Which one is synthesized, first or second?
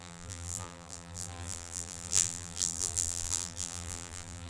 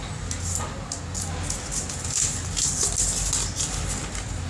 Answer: first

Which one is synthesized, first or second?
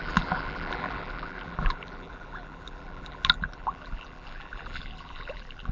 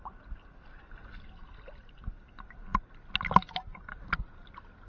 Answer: first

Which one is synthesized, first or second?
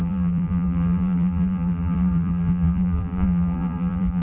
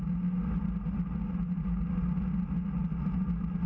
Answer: first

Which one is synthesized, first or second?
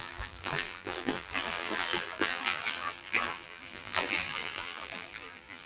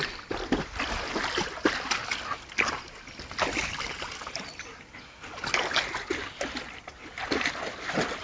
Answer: first